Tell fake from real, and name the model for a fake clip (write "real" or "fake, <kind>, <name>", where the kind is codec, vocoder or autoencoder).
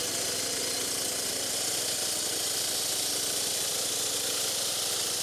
real